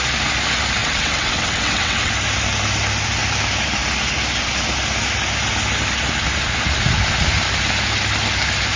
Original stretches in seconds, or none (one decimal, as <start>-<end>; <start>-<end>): 0.0-0.8; 2.1-8.8